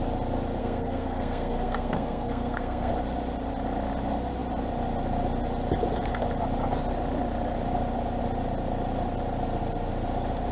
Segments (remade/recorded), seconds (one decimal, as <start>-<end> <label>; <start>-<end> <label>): 0.0-0.6 recorded; 0.6-2.9 remade; 2.9-10.5 recorded